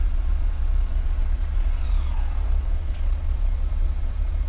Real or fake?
fake